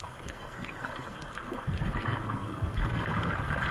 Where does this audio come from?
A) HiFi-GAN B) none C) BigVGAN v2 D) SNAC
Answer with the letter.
D